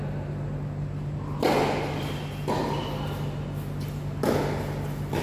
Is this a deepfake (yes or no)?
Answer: no